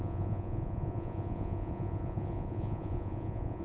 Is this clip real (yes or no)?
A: no